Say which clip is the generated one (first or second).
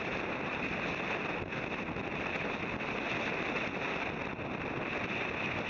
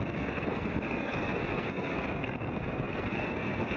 second